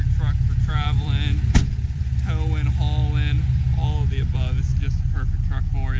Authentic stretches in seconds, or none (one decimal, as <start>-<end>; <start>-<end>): 0.0-0.7; 2.0-6.0